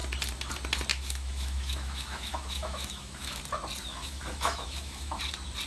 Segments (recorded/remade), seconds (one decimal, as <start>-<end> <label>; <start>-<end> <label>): 0.0-0.9 recorded; 0.9-3.4 remade; 3.4-3.9 recorded; 3.9-5.2 remade; 5.2-5.7 recorded